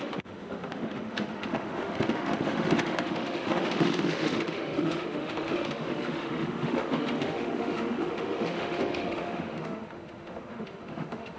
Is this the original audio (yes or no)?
no